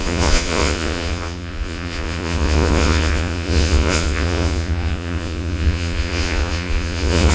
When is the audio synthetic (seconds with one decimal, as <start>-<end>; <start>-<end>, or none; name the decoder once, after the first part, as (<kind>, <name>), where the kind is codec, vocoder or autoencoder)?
0.0-7.3 (vocoder, Vocos)